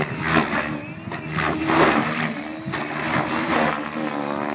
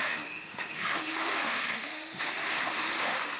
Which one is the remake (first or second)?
second